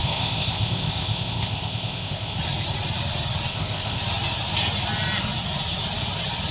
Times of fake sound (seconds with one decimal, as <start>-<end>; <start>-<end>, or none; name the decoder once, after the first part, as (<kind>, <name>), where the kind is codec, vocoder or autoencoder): 0.0-2.4 (codec, ZipCodec); 3.5-4.0